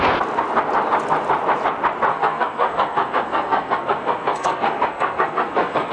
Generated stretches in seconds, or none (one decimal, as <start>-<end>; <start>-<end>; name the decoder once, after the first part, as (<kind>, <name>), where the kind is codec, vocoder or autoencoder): 2.1-5.9 (codec, SNAC)